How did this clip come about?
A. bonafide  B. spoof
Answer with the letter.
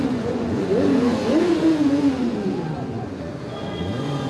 B